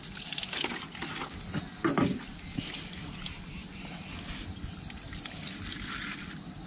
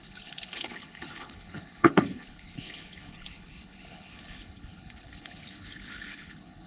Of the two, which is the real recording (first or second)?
first